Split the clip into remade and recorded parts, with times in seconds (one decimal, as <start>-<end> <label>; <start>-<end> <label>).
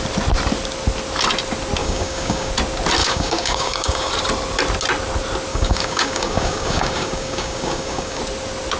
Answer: 0.0-1.8 recorded; 1.8-2.5 remade; 2.5-3.0 recorded; 3.0-4.1 remade; 4.1-5.5 recorded; 5.5-8.2 remade; 8.2-8.8 recorded